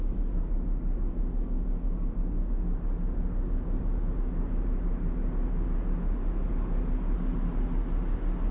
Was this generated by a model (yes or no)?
no